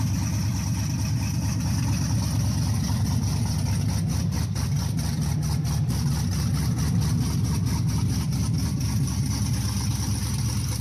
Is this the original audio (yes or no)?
yes